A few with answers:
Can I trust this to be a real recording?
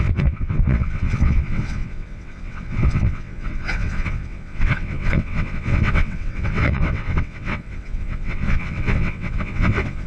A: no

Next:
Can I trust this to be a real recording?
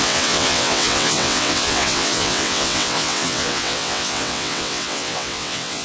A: no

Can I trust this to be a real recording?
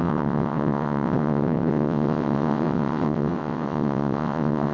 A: no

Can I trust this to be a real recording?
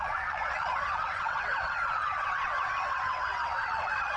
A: no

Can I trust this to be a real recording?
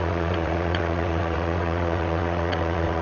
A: no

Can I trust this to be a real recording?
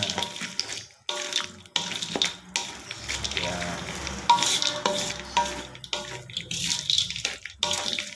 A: yes